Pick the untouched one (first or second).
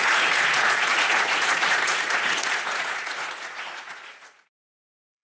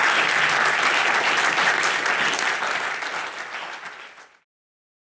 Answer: second